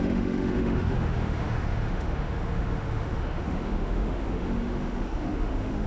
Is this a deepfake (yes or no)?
yes